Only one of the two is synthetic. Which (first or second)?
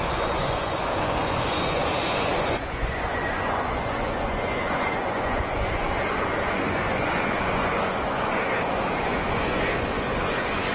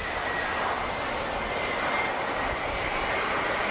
first